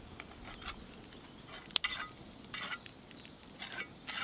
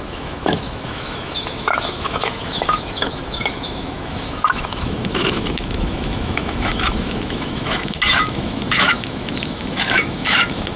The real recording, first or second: first